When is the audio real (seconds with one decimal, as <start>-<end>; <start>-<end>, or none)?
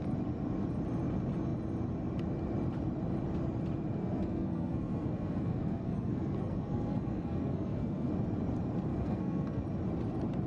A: 0.0-4.0; 8.1-8.9; 9.6-10.5